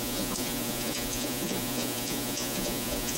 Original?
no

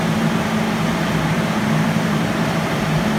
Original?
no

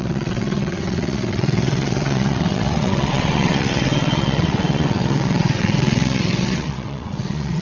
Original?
no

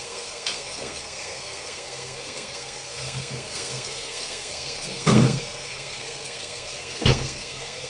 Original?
no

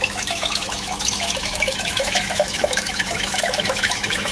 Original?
no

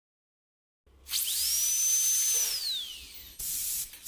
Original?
yes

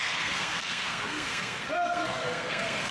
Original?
no